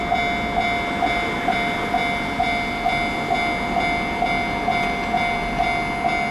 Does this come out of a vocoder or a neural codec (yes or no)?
no